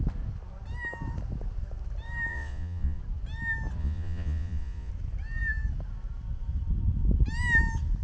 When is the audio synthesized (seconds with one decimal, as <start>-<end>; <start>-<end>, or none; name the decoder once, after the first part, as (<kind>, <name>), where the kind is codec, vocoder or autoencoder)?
2.3-3.0 (vocoder, Vocos); 3.8-4.9